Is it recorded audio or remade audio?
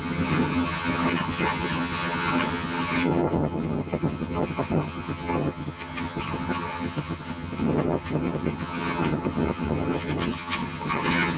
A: remade